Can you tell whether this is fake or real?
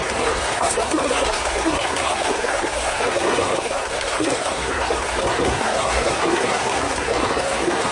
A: fake